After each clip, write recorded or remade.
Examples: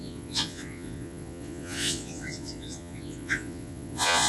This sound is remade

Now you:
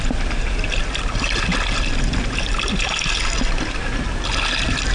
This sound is recorded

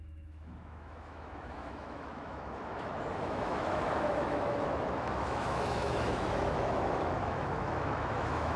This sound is remade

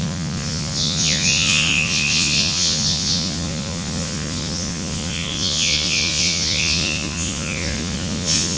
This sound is remade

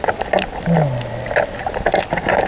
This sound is recorded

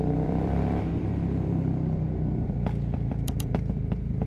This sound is remade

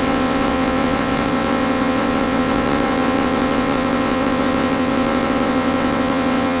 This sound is remade